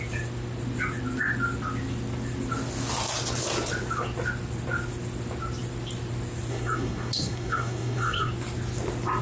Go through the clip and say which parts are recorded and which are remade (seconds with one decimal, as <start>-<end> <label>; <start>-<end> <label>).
0.0-6.5 recorded; 6.5-8.3 remade; 8.3-9.2 recorded